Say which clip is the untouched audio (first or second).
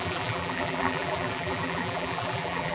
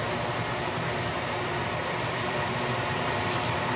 second